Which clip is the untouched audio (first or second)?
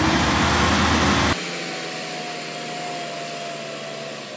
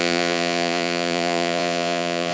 first